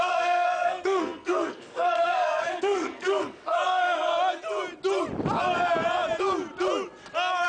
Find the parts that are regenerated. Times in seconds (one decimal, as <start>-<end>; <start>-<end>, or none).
0.0-4.1